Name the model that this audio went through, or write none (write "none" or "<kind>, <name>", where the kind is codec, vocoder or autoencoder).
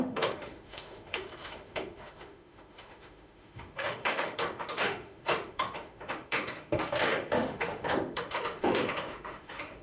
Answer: autoencoder, DAC-VAE